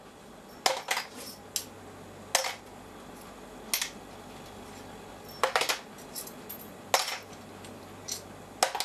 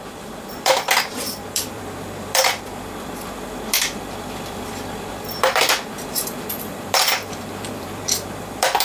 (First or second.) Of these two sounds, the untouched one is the first